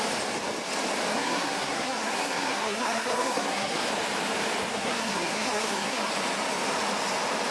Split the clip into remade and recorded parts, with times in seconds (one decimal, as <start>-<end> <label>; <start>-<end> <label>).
0.0-1.1 recorded; 1.1-3.9 remade; 3.9-4.7 recorded; 4.7-6.1 remade; 6.1-7.5 recorded